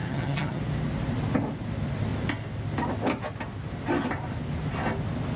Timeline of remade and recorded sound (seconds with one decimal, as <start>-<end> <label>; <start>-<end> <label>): 0.0-0.6 remade; 0.6-5.4 recorded